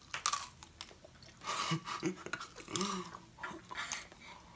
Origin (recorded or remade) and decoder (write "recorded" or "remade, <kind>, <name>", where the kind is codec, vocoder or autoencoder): recorded